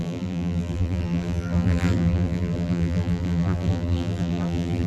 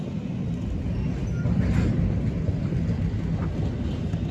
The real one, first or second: second